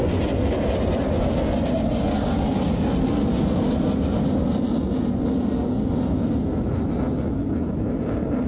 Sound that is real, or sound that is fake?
real